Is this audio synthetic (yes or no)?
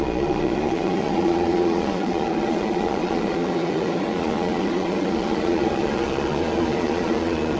yes